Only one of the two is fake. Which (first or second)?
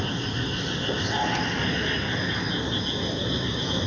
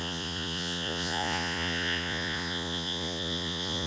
second